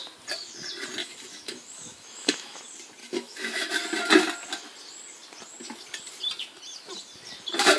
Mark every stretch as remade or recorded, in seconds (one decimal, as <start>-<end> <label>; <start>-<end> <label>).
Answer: 0.0-1.0 recorded; 1.0-2.6 remade; 2.6-3.0 recorded; 3.0-3.7 remade; 3.7-7.8 recorded